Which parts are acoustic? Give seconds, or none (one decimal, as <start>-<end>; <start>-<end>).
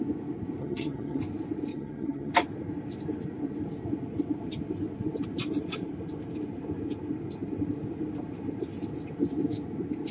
0.0-0.6; 1.2-1.7; 2.3-10.1